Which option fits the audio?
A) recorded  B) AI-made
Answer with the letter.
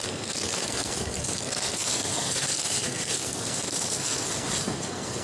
B